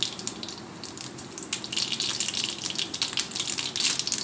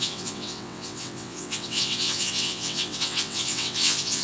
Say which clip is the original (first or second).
first